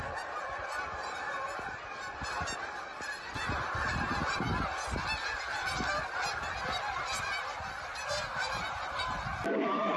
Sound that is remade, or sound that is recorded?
remade